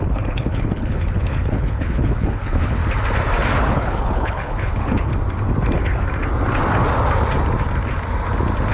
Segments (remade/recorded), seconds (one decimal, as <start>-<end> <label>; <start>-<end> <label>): 0.0-2.8 remade; 2.8-3.6 recorded; 3.6-5.1 remade; 5.1-8.7 recorded